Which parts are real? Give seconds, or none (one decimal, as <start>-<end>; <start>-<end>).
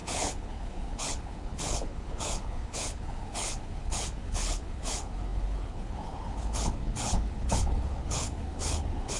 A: none